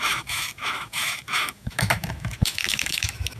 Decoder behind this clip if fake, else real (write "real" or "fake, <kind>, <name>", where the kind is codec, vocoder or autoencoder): fake, autoencoder, DAC-VAE